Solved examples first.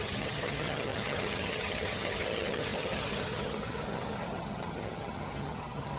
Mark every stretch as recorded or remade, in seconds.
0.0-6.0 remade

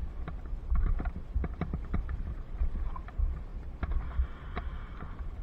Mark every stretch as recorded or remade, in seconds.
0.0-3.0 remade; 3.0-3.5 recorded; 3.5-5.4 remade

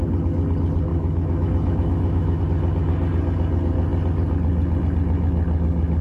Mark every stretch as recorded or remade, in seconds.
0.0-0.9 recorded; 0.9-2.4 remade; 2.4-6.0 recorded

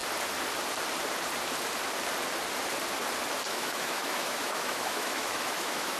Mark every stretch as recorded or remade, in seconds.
0.0-3.4 recorded; 3.4-6.0 remade

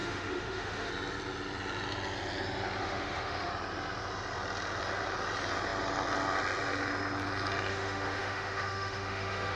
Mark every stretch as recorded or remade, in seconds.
0.0-0.9 remade; 0.9-2.8 recorded; 2.8-3.5 remade; 3.5-7.7 recorded; 7.7-9.6 remade

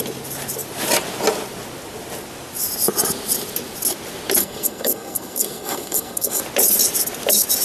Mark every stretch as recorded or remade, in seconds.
0.0-4.4 recorded; 4.4-6.4 remade; 6.4-7.6 recorded

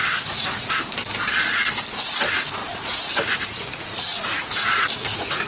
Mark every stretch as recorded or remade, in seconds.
0.0-0.7 remade; 0.7-2.6 recorded; 2.6-5.5 remade